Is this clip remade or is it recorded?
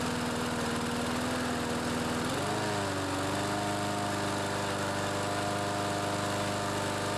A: recorded